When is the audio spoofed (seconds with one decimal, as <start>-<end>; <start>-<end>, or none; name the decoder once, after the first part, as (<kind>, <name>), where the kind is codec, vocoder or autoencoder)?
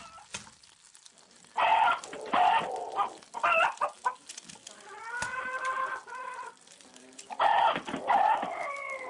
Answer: none